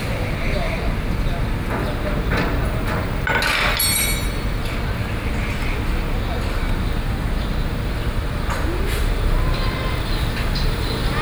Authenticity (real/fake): real